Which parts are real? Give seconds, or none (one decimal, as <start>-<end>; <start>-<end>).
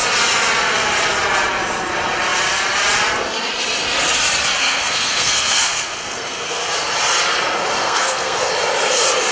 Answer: 0.0-4.6; 6.6-7.8; 8.5-9.3